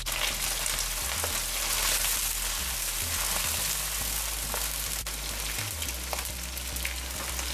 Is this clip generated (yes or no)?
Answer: no